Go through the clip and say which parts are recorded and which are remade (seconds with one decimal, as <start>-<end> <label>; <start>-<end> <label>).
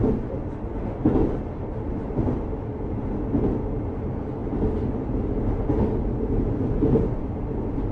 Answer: 0.0-7.9 recorded